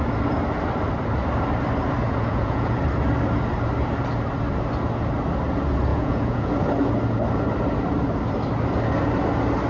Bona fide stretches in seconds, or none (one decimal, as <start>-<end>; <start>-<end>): 0.0-2.0; 2.8-5.9; 6.5-9.7

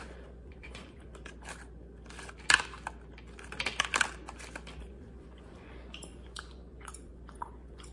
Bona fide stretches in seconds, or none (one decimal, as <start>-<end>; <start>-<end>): 1.1-4.9